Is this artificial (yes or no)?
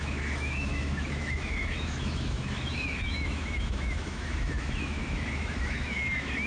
yes